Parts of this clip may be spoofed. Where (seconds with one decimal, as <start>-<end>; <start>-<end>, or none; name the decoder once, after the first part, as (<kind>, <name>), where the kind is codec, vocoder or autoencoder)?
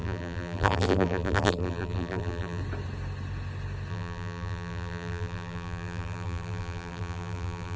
0.0-2.6 (vocoder, BigVGAN v2); 3.9-7.8